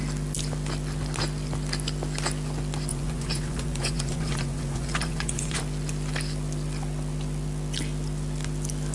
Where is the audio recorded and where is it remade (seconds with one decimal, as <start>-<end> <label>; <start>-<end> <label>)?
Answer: 0.0-2.9 recorded; 2.9-5.6 remade; 5.6-8.9 recorded